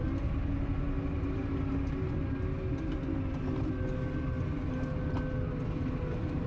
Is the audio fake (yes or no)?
no